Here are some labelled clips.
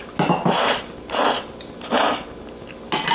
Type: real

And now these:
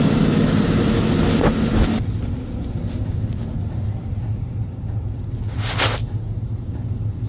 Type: real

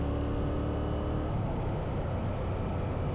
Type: real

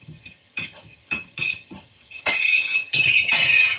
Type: fake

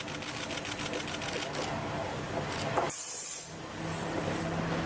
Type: real